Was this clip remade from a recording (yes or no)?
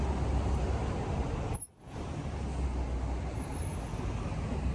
no